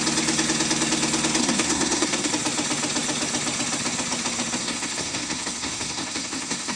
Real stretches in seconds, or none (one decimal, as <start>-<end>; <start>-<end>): 0.0-1.4; 2.3-4.6